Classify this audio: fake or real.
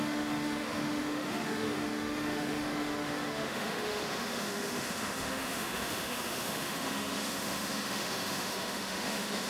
fake